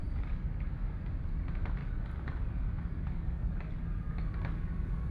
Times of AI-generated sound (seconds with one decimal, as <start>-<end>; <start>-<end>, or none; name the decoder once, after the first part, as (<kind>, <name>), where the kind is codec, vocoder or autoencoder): 0.0-1.1 (codec, DAC); 1.8-5.1